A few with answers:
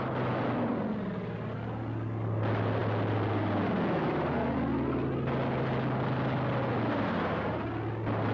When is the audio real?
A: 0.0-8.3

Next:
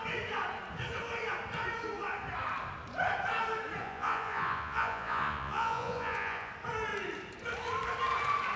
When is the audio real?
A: 0.0-3.8; 6.5-8.6

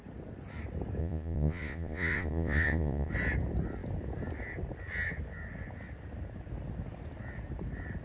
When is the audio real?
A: 0.0-1.0; 3.1-8.0

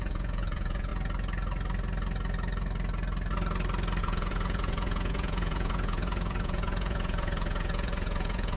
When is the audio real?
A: 0.9-4.0

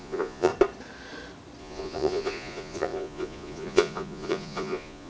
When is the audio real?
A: 0.5-1.6

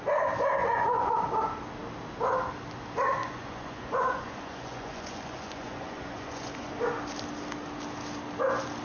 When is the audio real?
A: 0.0-0.6; 1.1-3.2; 6.7-8.8